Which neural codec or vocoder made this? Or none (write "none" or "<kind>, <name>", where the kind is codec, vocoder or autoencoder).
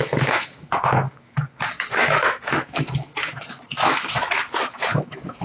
autoencoder, DAC-VAE